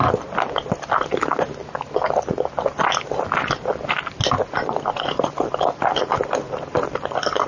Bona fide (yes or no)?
yes